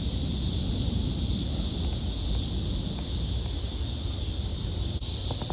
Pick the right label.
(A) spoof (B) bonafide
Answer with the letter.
B